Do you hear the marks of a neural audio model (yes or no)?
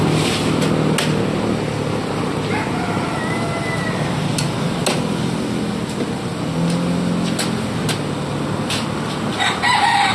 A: no